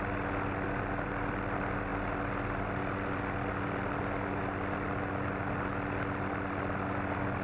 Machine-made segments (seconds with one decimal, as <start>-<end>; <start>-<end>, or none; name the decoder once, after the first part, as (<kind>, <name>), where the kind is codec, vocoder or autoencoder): none

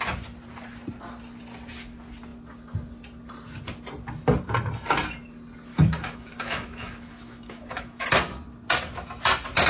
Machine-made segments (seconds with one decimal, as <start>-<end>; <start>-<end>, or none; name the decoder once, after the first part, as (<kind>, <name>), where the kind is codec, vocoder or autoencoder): 5.7-8.1 (autoencoder, DAC-VAE)

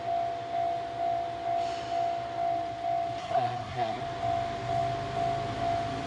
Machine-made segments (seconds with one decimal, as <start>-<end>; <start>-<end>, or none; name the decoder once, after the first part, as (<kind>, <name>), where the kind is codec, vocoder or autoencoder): 3.2-4.0 (codec, SNAC)

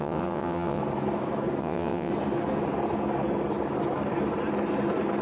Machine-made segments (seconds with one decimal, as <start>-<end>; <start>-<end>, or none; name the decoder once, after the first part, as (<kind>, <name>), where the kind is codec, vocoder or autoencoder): 0.0-0.8 (vocoder, WaveNeXt); 1.6-2.1

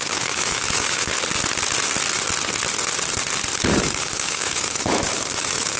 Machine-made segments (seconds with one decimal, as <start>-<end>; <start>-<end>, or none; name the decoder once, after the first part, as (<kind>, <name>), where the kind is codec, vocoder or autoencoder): 0.0-1.1 (autoencoder, DAC-VAE); 3.8-5.8